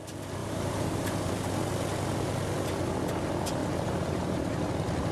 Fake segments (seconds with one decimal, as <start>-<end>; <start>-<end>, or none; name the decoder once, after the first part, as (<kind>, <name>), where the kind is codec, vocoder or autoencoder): 0.4-1.3 (vocoder, BigVGAN v2); 3.6-4.4